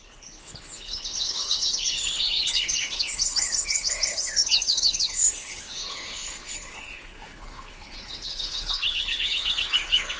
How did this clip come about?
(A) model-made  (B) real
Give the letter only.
A